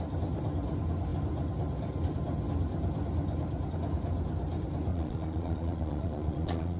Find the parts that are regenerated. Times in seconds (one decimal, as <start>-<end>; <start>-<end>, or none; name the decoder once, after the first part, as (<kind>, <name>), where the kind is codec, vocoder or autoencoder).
4.9-6.8 (vocoder, Vocos)

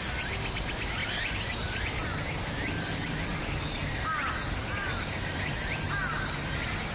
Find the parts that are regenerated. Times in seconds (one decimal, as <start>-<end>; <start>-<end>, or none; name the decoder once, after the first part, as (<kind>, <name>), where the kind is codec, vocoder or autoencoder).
none